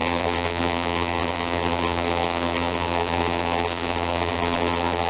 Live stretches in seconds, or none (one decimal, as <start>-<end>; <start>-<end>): none